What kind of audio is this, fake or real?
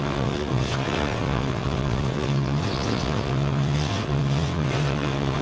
fake